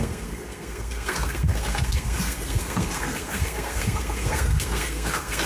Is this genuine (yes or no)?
no